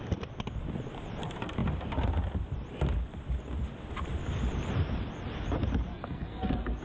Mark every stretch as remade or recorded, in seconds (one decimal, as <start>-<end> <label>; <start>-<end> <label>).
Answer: 0.0-5.9 recorded; 5.9-6.8 remade